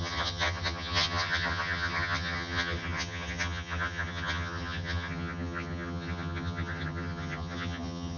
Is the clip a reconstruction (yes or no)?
yes